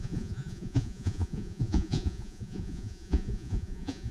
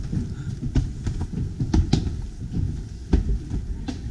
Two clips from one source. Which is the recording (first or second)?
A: second